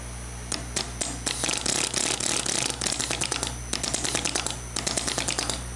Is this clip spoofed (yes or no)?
no